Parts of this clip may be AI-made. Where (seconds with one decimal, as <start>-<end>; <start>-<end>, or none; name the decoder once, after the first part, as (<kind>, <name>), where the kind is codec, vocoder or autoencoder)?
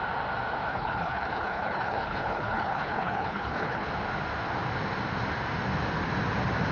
0.7-3.9 (codec, HILCodec)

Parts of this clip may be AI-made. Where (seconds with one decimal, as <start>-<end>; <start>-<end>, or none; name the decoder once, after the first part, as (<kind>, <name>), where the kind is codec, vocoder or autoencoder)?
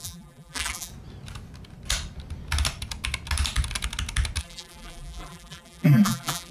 0.0-0.9 (vocoder, BigVGAN v2); 4.4-6.5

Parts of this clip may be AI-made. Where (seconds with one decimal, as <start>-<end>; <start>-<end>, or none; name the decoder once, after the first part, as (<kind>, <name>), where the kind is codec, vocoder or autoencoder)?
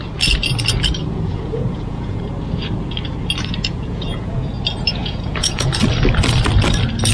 1.0-2.2 (vocoder, Vocos); 3.7-4.5; 5.0-5.7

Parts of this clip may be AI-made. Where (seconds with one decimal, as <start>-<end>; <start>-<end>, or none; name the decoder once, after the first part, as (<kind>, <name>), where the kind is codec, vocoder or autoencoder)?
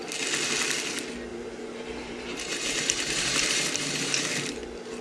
1.3-4.3 (vocoder, BigVGAN v2)